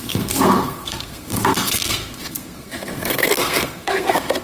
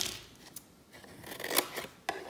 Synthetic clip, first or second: first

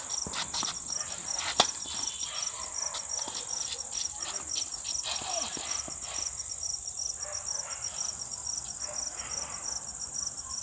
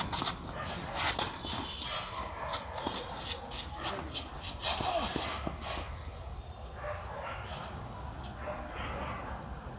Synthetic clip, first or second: first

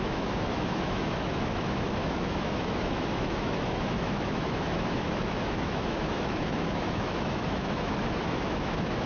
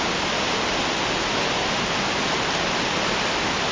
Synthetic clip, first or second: first